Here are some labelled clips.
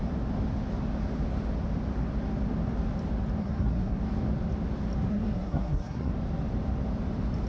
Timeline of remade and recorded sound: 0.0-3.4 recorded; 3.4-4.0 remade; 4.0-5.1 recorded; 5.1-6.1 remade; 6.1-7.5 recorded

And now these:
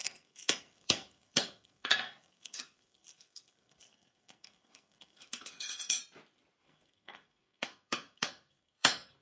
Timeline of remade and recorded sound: 0.0-6.0 remade; 6.0-6.6 recorded; 6.6-9.2 remade

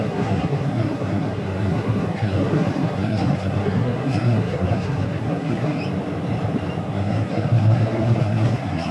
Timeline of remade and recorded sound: 0.0-5.8 remade; 5.8-6.8 recorded; 6.8-8.9 remade

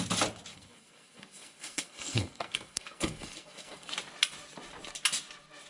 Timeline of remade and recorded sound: 0.0-0.5 recorded; 0.5-3.9 remade; 3.9-5.7 recorded

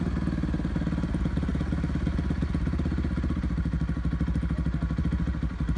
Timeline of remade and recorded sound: 0.0-5.8 recorded

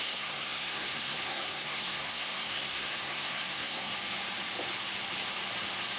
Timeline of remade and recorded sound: 0.0-3.9 remade; 3.9-6.0 recorded